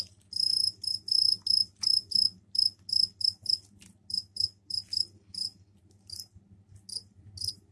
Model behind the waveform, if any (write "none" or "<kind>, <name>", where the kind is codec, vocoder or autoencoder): none